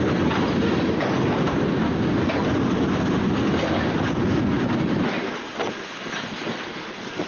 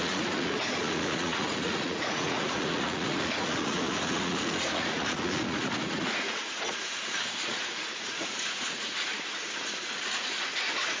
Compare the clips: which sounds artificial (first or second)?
second